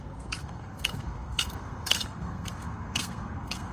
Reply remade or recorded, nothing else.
remade